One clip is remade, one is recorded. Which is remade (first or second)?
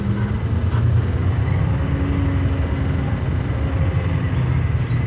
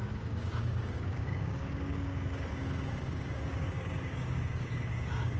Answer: second